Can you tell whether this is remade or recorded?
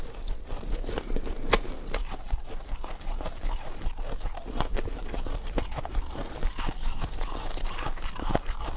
recorded